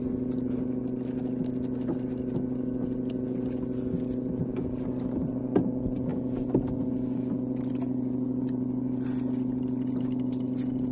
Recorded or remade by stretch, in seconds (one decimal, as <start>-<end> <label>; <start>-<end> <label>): 0.0-10.9 recorded